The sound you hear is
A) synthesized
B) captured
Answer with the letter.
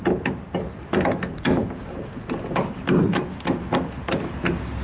B